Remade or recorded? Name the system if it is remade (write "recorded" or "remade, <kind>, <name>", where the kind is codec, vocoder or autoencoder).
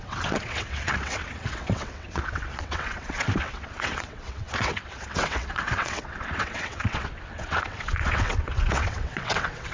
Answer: remade, vocoder, WaveNeXt